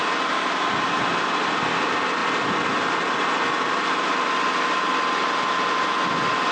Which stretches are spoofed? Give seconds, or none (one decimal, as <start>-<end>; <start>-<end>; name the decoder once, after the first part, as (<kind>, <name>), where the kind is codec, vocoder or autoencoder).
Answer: none